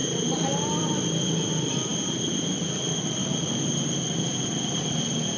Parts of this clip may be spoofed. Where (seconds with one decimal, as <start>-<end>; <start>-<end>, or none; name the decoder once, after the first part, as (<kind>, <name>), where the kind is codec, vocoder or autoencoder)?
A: none